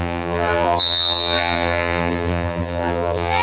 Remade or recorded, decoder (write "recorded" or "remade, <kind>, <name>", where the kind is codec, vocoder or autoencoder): remade, vocoder, BigVGAN v2